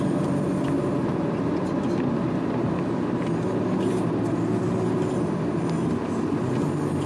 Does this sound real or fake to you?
real